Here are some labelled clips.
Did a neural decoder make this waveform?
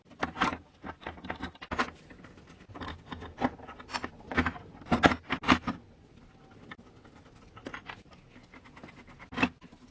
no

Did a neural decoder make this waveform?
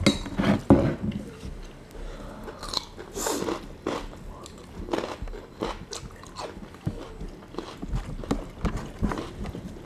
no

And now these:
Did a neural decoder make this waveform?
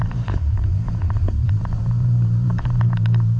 yes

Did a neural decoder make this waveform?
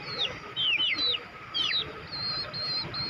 no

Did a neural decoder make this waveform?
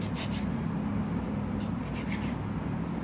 no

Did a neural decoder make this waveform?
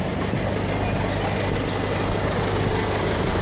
no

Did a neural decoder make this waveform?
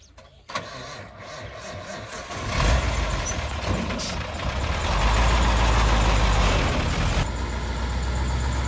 no